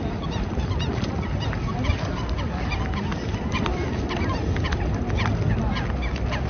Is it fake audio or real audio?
real